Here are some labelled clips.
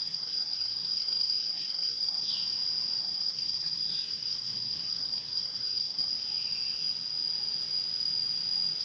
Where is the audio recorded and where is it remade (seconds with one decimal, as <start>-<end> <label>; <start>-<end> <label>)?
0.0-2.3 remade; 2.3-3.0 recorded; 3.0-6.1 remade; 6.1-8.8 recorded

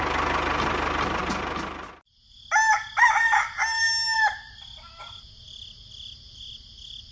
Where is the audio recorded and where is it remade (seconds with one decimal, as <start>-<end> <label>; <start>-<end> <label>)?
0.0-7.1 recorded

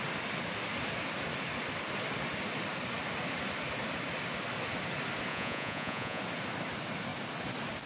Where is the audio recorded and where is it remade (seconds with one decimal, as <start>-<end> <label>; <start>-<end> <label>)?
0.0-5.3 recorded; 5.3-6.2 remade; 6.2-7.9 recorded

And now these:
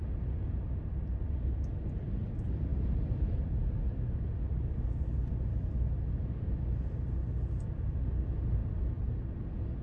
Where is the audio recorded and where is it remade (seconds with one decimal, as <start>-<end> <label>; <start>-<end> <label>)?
0.0-2.7 recorded; 2.7-3.6 remade; 3.6-9.8 recorded

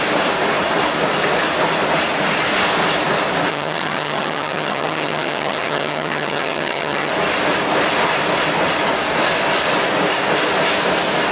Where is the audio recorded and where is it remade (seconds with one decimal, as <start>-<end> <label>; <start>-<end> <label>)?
0.0-3.5 recorded; 3.5-7.1 remade; 7.1-11.3 recorded

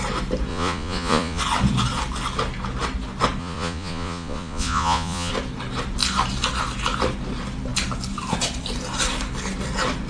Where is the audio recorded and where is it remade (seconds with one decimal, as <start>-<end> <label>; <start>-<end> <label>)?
0.0-0.5 recorded; 0.5-1.4 remade; 1.4-3.4 recorded; 3.4-5.3 remade; 5.3-10.1 recorded

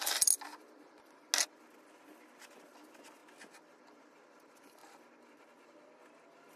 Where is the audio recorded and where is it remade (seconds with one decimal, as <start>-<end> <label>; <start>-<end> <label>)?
0.0-6.6 recorded